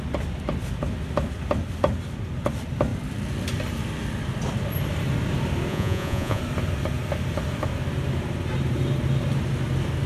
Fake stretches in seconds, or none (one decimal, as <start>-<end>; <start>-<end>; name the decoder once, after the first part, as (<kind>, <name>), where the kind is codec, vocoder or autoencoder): 5.7-6.4 (vocoder, Vocos)